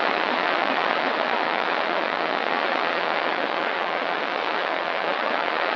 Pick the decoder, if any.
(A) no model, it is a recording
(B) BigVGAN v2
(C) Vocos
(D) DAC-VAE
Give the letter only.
C